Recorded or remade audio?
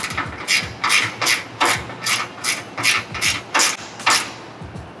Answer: recorded